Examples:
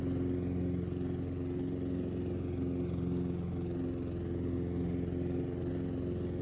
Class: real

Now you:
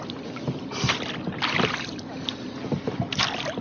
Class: real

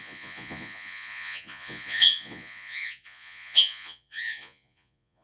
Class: fake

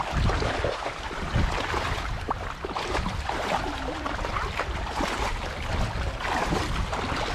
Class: real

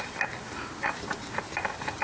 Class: real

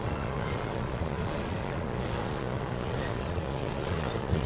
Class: fake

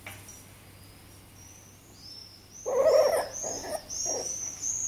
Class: real